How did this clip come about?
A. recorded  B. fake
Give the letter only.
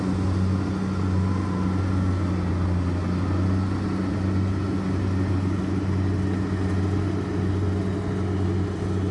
A